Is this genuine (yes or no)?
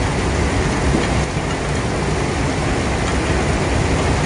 yes